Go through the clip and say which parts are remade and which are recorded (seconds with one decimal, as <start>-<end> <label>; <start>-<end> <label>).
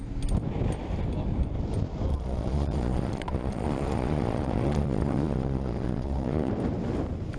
0.0-2.1 recorded; 2.1-6.5 remade; 6.5-7.4 recorded